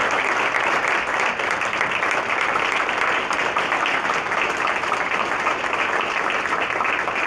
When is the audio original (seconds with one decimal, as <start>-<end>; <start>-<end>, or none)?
0.0-7.3